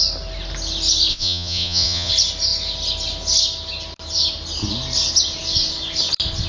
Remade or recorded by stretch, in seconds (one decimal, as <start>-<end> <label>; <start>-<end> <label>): 0.0-1.1 recorded; 1.1-2.1 remade; 2.1-6.5 recorded